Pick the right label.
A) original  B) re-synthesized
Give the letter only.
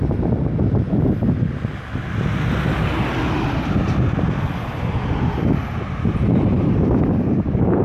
A